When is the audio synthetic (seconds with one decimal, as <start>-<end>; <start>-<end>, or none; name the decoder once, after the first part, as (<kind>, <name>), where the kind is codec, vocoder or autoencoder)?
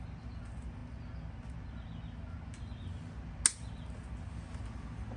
none